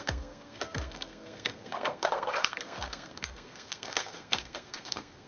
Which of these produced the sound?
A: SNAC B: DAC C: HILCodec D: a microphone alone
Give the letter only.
A